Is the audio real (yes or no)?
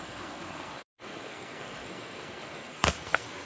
no